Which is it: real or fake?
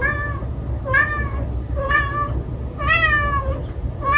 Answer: real